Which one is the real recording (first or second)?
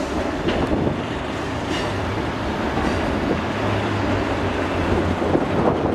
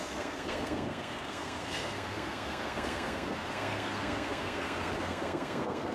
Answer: first